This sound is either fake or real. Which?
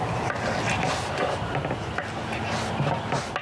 real